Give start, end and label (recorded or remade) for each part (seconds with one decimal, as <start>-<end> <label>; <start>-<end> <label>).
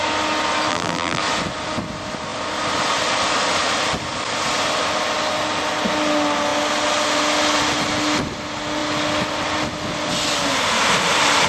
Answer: 0.0-0.7 recorded; 0.7-1.2 remade; 1.2-11.5 recorded